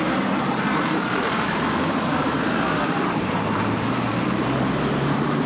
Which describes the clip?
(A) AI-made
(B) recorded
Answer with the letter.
A